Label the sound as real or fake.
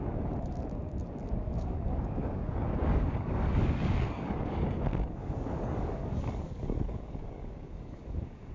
fake